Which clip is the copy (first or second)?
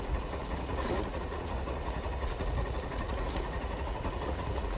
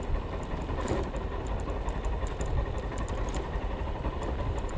first